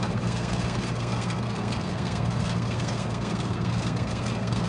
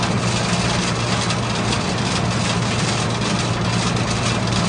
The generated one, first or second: first